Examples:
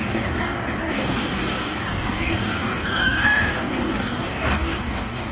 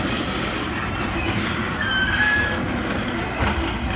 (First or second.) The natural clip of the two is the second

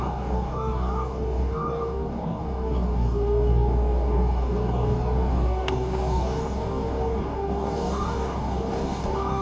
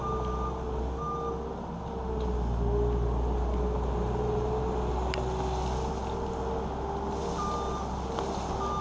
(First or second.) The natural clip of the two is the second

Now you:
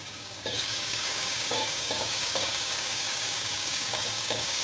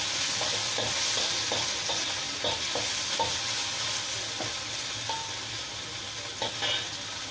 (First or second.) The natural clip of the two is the second